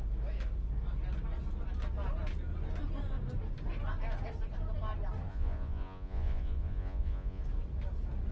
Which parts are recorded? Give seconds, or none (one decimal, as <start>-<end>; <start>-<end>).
0.0-5.3; 7.4-8.3